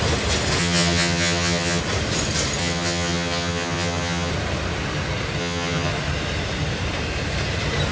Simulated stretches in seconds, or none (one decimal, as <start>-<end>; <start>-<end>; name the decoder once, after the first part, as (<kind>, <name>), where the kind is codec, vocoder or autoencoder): 0.6-1.8 (vocoder, HiFi-GAN); 2.6-4.3; 5.4-5.9

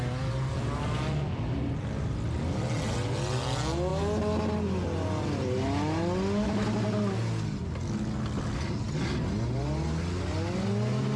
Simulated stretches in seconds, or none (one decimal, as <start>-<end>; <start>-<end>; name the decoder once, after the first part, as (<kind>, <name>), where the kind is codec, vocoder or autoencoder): none

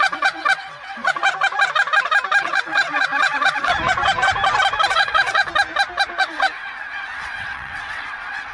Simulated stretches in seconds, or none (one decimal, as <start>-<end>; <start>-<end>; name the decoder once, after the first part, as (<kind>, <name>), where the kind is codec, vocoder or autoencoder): 0.0-1.2 (vocoder, WaveNeXt); 2.4-3.7; 4.9-5.5; 6.2-8.5